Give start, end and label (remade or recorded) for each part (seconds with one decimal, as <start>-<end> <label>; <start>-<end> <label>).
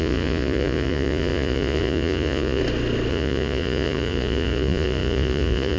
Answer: 0.0-2.6 remade; 2.6-3.1 recorded; 3.1-5.8 remade